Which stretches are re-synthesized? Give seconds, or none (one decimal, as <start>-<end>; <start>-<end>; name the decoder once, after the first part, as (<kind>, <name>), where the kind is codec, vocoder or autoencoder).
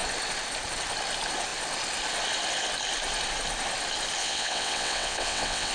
4.2-5.7 (vocoder, WaveNeXt)